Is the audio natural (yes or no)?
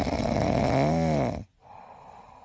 yes